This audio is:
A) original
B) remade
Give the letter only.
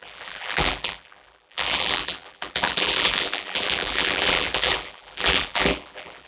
B